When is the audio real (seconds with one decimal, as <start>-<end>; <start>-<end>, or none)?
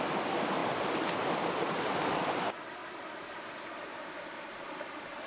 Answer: 0.0-5.3